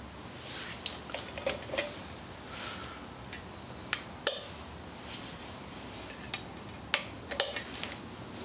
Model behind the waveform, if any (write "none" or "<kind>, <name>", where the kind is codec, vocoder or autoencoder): none